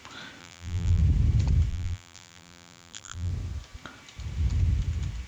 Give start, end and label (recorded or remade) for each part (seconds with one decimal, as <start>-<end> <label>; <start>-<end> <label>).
0.0-0.4 recorded; 0.4-1.0 remade; 1.0-1.7 recorded; 1.7-3.3 remade; 3.3-5.3 recorded